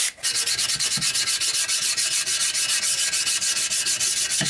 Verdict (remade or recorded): recorded